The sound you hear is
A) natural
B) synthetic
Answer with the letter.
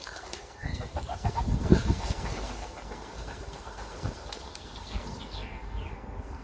B